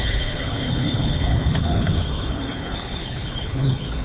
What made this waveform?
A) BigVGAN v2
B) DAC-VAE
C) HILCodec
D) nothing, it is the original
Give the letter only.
C